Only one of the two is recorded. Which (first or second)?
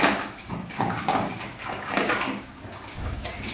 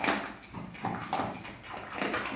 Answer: second